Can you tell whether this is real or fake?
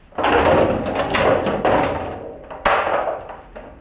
real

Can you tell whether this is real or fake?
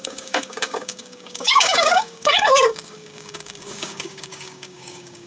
fake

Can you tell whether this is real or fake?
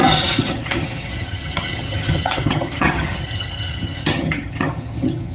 fake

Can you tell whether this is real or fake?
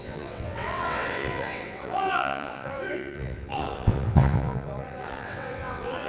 fake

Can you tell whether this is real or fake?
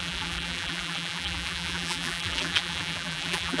fake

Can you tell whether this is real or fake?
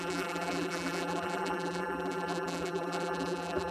fake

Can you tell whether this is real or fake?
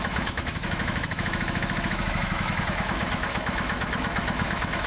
fake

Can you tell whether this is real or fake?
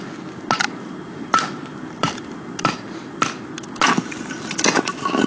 real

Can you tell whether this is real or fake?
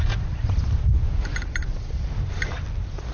real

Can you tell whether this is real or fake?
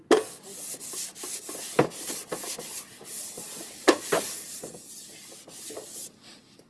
real